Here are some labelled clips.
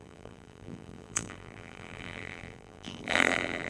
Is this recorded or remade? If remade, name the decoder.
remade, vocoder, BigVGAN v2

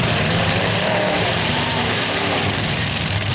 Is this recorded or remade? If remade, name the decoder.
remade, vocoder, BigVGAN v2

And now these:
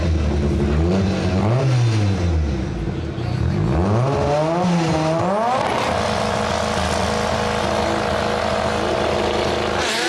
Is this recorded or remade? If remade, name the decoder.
recorded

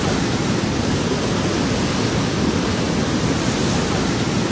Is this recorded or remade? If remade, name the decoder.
recorded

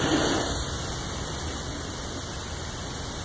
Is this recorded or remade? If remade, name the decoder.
recorded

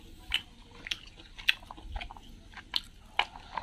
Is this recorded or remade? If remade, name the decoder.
recorded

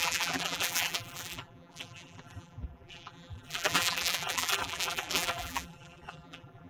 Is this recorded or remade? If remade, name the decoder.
remade, vocoder, BigVGAN v2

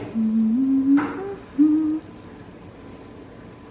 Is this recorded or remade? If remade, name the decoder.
recorded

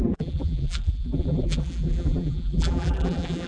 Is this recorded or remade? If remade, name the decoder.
remade, vocoder, BigVGAN v2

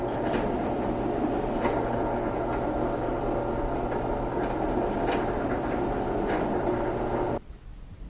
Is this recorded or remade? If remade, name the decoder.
remade, vocoder, BigVGAN v2